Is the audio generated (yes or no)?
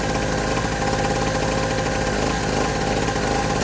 no